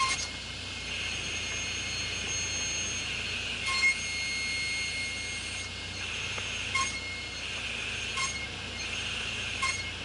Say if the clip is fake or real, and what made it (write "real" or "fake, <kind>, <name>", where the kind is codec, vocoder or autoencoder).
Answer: real